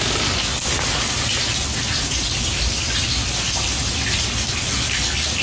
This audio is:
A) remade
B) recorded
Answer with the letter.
B